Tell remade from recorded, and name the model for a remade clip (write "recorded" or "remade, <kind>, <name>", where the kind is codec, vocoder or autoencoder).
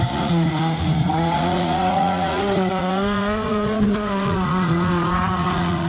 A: remade, vocoder, Vocos